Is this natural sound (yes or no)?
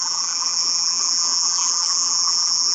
no